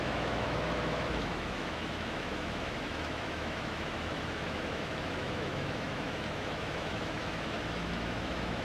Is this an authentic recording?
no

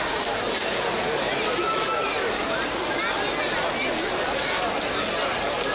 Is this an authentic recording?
yes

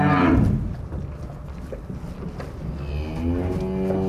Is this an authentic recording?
yes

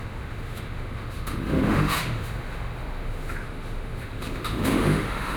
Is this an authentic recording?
no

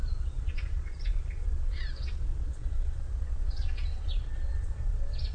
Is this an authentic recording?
no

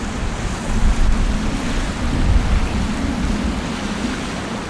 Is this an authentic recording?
yes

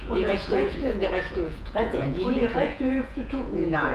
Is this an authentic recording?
no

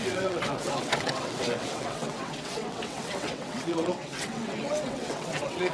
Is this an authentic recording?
no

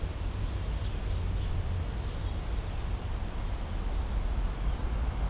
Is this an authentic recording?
yes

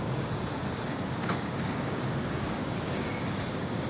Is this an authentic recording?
no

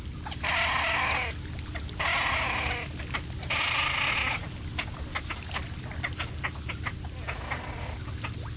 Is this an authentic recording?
yes